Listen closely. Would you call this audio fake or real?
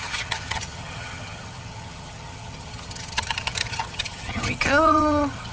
fake